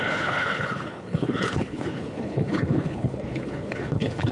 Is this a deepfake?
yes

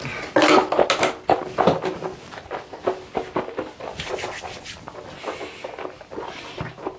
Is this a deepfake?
no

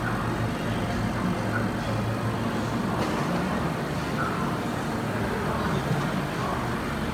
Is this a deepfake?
no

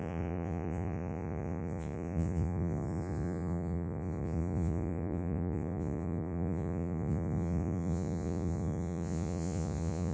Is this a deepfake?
yes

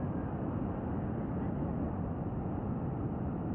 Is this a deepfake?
no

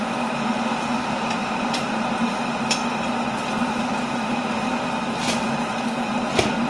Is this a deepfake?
yes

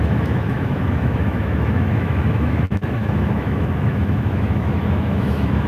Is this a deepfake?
yes